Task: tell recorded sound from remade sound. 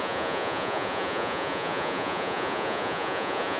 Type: remade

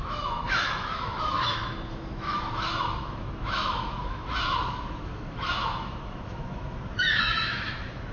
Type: remade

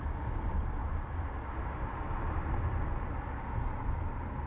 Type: recorded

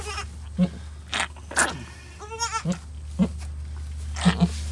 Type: recorded